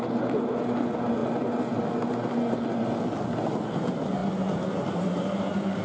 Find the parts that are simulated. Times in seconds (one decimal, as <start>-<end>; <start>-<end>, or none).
none